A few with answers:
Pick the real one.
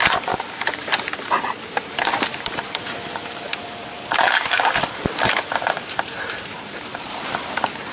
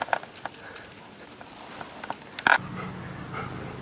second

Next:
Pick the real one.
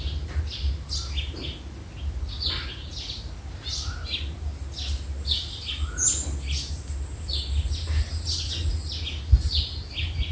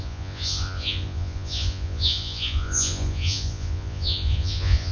first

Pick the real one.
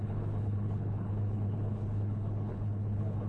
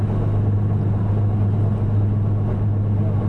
second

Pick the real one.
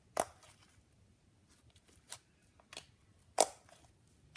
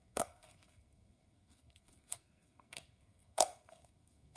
first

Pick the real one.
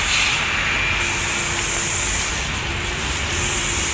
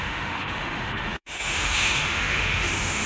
first